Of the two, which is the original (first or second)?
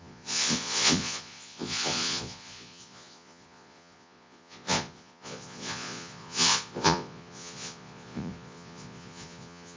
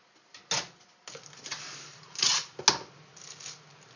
second